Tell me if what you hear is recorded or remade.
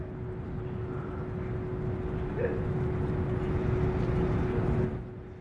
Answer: recorded